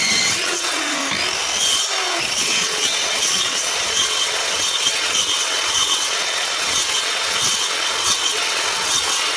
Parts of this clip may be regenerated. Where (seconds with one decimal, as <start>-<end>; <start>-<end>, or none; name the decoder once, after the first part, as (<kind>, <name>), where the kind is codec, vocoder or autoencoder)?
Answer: 0.0-1.0 (vocoder, WaveNeXt); 2.2-9.4